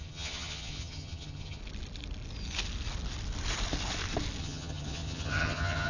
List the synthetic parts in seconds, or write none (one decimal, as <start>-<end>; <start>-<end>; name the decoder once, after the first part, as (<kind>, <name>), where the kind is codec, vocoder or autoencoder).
0.0-1.6 (vocoder, HiFi-GAN); 4.4-5.9